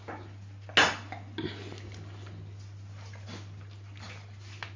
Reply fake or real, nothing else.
real